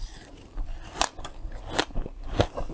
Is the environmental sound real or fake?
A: real